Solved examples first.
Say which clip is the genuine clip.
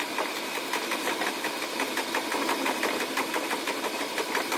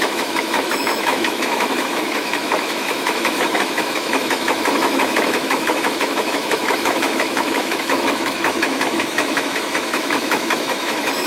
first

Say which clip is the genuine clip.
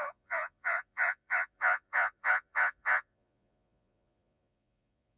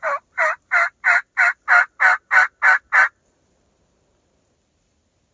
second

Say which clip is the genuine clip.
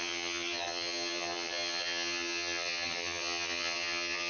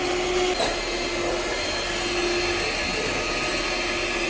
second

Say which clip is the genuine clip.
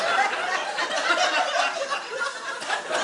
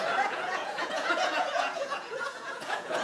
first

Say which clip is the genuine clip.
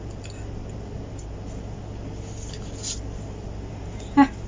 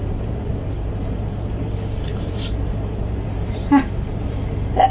first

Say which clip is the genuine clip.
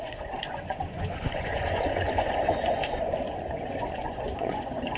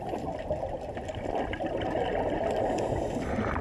second